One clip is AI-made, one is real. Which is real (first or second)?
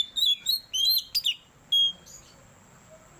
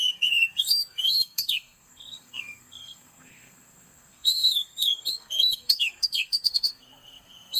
first